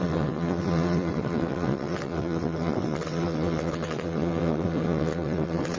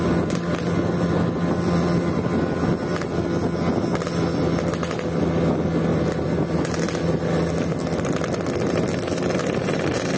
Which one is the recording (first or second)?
second